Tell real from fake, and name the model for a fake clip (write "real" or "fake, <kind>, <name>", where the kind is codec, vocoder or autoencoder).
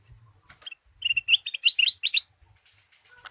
real